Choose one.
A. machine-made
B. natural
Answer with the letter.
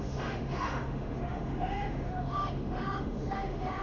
A